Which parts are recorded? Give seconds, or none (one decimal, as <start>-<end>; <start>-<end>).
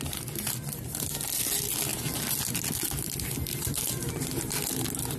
0.0-5.2